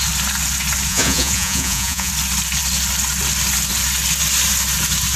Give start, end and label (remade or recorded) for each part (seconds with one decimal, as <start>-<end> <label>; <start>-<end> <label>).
0.0-0.9 recorded; 0.9-2.1 remade; 2.1-5.2 recorded